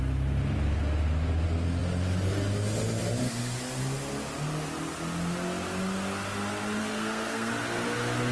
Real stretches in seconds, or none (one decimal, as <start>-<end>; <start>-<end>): 0.0-6.8; 7.5-8.3